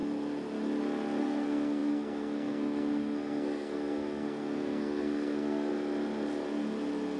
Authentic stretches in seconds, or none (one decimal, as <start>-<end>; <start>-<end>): 0.0-1.2; 5.7-7.2